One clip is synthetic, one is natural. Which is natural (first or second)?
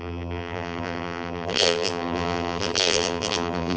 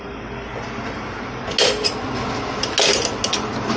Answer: second